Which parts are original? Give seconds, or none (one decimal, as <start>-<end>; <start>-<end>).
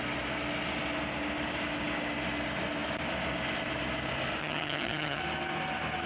0.0-4.4; 5.2-6.1